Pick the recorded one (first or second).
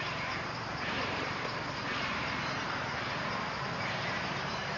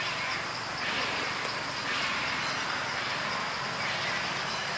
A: second